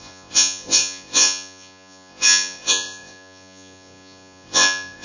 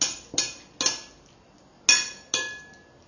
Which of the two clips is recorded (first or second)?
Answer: second